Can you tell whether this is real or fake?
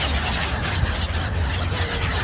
real